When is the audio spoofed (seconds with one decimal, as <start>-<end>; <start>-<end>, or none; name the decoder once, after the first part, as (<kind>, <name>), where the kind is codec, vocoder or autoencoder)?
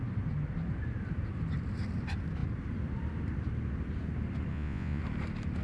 4.5-5.0 (vocoder, Vocos)